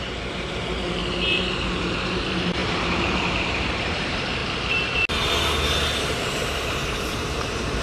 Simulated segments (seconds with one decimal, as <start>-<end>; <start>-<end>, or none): 0.0-1.0; 1.7-4.4; 6.0-7.8